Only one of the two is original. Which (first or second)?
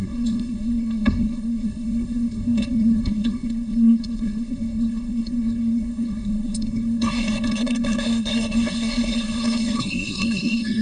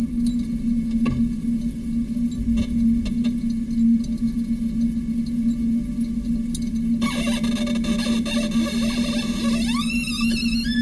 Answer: second